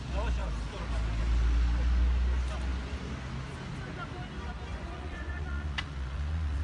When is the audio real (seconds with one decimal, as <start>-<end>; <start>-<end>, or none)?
0.0-4.7